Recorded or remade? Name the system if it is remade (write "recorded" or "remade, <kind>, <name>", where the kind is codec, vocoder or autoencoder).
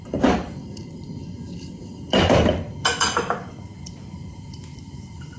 remade, vocoder, BigVGAN v2